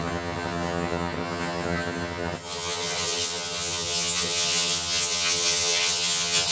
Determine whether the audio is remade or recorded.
remade